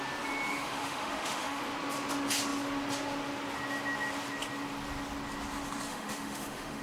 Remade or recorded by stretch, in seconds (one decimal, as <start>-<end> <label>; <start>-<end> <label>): 0.0-0.5 recorded; 0.5-1.6 remade; 1.6-5.9 recorded; 5.9-6.8 remade

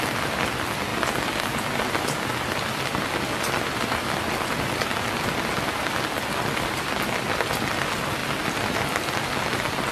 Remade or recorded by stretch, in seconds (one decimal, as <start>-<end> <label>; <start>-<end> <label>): 0.0-9.9 recorded

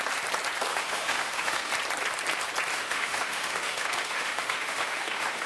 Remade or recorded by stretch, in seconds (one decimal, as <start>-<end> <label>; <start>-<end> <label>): 0.0-0.7 recorded; 0.7-1.7 remade; 1.7-2.7 recorded; 2.7-5.5 remade

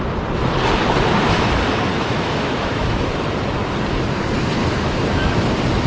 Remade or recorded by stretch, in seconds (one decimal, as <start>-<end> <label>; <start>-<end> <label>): 0.0-1.9 recorded; 1.9-3.0 remade; 3.0-4.6 recorded; 4.6-5.4 remade; 5.4-5.9 recorded

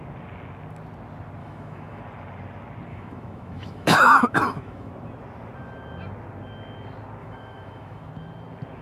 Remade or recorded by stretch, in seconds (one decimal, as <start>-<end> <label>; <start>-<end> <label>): 0.0-1.4 recorded; 1.4-2.0 remade; 2.0-2.9 recorded; 2.9-4.9 remade; 4.9-7.2 recorded; 7.2-8.1 remade; 8.1-8.8 recorded